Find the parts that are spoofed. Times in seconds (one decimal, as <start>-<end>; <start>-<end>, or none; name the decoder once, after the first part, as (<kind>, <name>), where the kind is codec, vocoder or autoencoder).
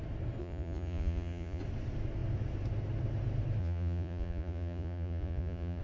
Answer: 0.4-1.6 (vocoder, Vocos); 3.6-5.8